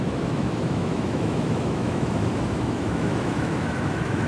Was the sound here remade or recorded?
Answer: remade